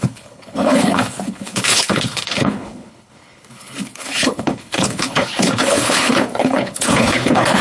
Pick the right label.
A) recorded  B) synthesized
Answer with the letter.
B